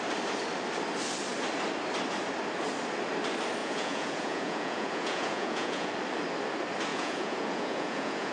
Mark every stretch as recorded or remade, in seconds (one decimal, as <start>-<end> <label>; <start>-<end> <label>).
0.0-3.6 recorded; 3.6-5.9 remade; 5.9-6.9 recorded; 6.9-8.3 remade